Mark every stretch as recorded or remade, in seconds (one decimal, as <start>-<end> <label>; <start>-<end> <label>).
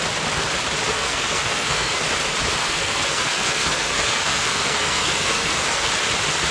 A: 0.0-0.9 recorded; 0.9-2.0 remade; 2.0-2.6 recorded; 2.6-5.9 remade; 5.9-6.5 recorded